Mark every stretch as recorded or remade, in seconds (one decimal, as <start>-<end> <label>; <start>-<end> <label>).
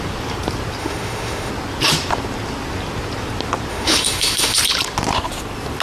0.0-0.8 recorded; 0.8-1.5 remade; 1.5-3.7 recorded; 3.7-4.6 remade; 4.6-5.8 recorded